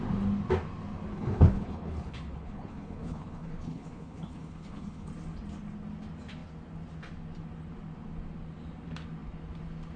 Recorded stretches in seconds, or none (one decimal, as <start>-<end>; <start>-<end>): 0.0-1.1; 5.1-10.0